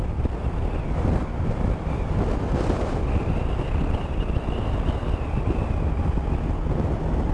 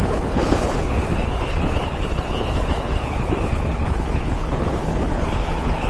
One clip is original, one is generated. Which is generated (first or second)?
second